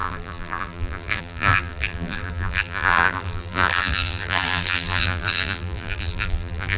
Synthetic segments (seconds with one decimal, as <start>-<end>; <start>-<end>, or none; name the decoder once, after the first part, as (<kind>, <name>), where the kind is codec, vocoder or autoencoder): 0.0-6.8 (vocoder, BigVGAN v2)